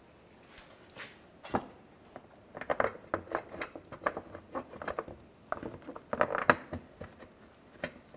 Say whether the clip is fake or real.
real